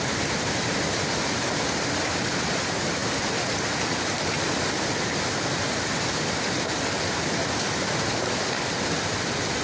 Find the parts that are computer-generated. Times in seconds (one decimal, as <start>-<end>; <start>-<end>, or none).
none